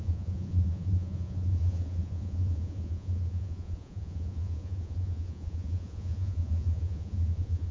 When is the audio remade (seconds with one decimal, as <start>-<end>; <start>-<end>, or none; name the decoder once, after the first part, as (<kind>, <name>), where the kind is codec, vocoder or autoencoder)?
0.0-7.7 (vocoder, Vocos)